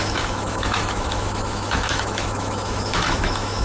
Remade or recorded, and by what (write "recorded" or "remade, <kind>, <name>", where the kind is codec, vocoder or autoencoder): remade, autoencoder, DAC-VAE